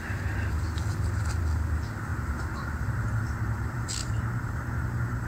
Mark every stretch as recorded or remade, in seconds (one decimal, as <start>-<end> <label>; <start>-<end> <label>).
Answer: 0.0-5.3 remade